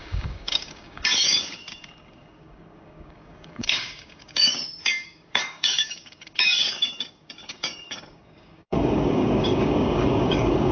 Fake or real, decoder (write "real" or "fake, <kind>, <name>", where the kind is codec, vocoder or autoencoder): fake, codec, DAC